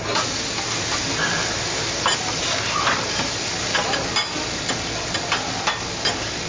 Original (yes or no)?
yes